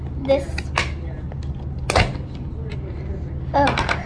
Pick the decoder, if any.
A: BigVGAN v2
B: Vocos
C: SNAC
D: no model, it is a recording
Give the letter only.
D